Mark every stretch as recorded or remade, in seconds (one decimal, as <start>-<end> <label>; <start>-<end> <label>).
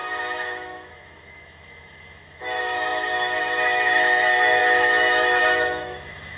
0.0-6.4 remade